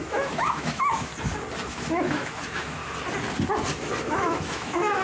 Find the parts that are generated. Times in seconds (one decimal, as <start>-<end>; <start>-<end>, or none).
0.0-1.1; 1.7-2.8; 4.0-5.0